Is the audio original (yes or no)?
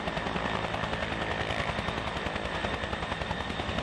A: yes